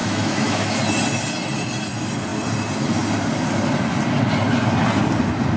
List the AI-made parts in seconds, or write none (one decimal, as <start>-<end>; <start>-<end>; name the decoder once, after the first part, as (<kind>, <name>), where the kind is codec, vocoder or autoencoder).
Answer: 0.0-0.8 (autoencoder, DAC-VAE)